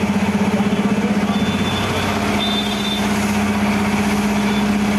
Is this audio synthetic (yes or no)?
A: no